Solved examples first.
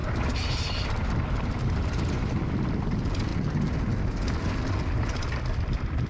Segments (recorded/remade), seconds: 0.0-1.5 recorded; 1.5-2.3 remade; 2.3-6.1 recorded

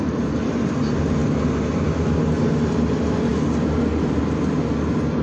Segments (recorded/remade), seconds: 0.0-5.2 recorded